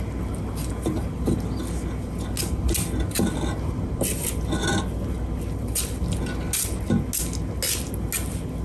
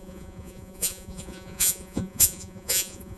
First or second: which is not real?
second